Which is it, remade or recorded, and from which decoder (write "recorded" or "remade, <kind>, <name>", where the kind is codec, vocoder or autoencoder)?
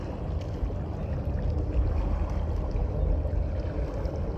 recorded